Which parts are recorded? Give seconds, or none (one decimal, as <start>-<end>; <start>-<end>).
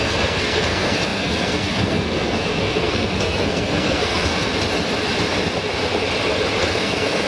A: 4.5-6.6